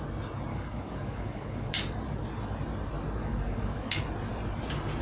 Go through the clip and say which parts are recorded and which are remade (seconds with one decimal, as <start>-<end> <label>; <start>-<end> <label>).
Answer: 0.0-0.5 recorded; 0.5-1.7 remade; 1.7-3.2 recorded; 3.2-4.0 remade; 4.0-5.0 recorded